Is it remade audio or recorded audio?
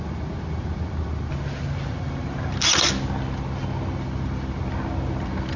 recorded